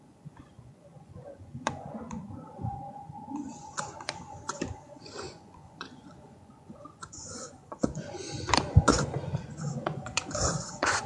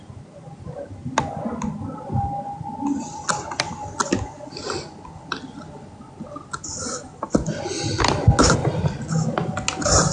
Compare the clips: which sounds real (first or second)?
second